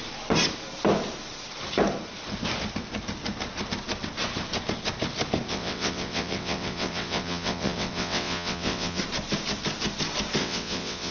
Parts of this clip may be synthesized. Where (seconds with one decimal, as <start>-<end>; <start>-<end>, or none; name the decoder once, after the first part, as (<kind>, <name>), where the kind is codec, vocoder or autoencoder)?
5.5-9.0 (vocoder, WaveNeXt); 10.4-11.1